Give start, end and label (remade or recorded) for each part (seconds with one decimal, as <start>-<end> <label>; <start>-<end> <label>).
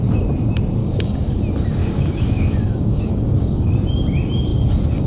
0.0-0.8 recorded; 0.8-1.4 remade; 1.4-1.8 recorded; 1.8-3.7 remade; 3.7-5.1 recorded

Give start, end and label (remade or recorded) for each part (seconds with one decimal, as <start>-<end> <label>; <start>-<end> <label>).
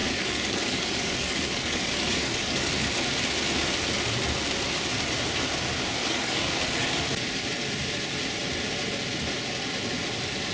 0.0-2.7 remade; 2.7-6.0 recorded; 6.0-6.6 remade; 6.6-10.5 recorded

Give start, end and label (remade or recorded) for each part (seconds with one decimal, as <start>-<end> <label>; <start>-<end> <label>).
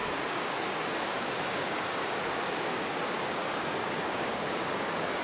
0.0-5.2 remade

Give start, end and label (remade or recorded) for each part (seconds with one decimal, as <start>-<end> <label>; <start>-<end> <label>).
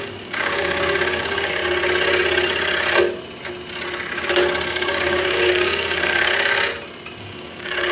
0.0-1.6 remade; 1.6-4.7 recorded; 4.7-6.7 remade; 6.7-7.2 recorded; 7.2-7.9 remade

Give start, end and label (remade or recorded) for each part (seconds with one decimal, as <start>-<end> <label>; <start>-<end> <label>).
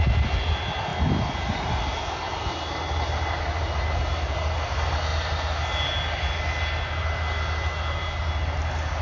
0.0-9.0 recorded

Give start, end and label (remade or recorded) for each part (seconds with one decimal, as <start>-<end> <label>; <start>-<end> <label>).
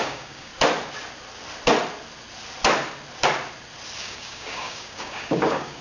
0.0-0.5 remade; 0.5-4.0 recorded; 4.0-5.8 remade